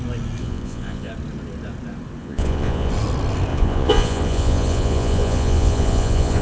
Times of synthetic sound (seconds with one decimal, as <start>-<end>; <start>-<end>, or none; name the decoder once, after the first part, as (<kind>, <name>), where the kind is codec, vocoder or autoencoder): 0.4-1.1 (vocoder, Vocos); 2.2-2.9; 3.5-6.4